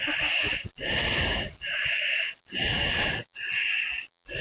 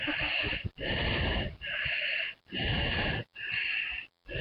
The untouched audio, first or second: first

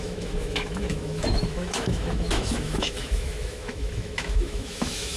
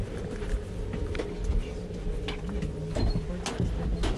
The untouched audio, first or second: second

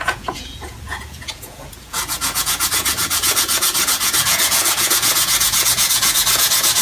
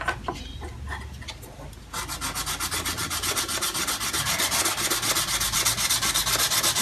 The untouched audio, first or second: second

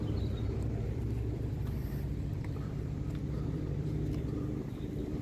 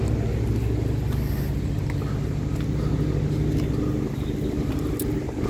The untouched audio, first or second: second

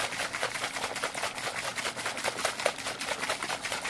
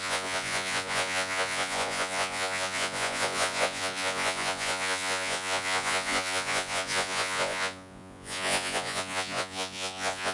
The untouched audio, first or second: first